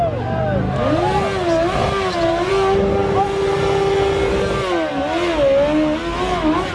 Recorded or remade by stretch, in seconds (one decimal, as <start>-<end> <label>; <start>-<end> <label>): 0.0-1.8 recorded; 1.8-2.5 remade; 2.5-6.7 recorded